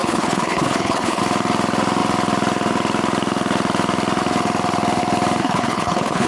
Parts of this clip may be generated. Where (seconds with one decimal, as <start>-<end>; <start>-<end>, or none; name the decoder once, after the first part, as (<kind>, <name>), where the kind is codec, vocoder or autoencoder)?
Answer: 0.0-1.2 (codec, HILCodec); 5.4-6.3